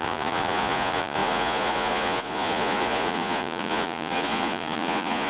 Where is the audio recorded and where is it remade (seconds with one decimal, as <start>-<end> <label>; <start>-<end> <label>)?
0.0-5.3 remade